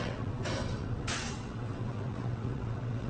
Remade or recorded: remade